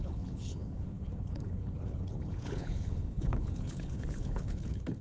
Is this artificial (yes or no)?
yes